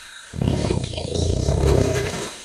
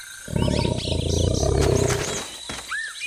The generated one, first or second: first